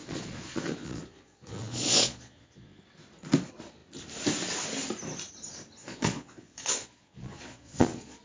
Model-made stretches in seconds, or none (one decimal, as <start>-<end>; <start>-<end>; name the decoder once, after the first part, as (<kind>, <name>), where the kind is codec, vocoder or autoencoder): 0.0-2.8 (vocoder, Vocos); 5.8-8.2